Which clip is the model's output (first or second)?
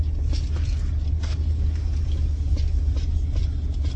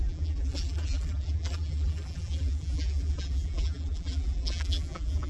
second